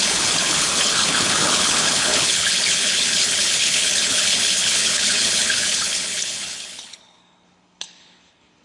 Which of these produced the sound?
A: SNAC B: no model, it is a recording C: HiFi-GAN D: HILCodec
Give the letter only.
D